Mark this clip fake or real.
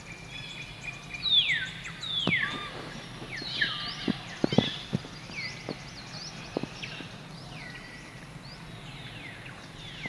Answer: real